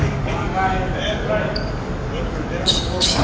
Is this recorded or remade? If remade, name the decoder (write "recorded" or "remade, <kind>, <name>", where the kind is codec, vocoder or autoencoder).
remade, codec, DAC